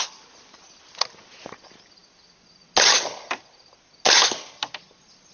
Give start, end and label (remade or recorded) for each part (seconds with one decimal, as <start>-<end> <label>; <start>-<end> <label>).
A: 0.0-5.3 recorded